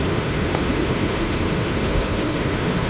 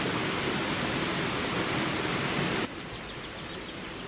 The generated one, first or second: first